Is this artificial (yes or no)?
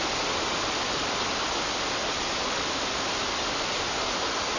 no